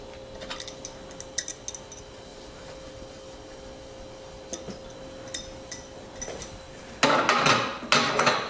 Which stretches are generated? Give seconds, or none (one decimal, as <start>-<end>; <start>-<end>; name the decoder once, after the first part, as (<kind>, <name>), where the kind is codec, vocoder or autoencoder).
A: none